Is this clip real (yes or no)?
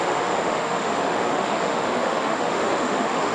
no